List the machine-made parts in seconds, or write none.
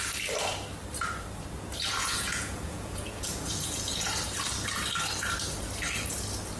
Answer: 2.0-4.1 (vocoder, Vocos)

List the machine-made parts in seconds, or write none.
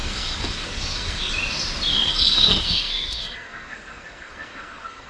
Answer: 0.0-1.3 (codec, SNAC); 1.9-5.1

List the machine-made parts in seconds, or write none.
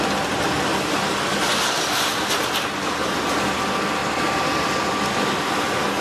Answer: none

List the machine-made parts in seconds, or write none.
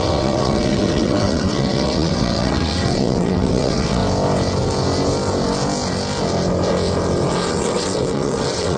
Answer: 0.0-4.0 (vocoder, WaveNeXt); 7.5-8.8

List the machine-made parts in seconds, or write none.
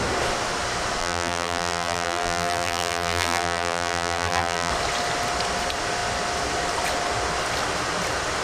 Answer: 1.0-4.7 (vocoder, BigVGAN v2)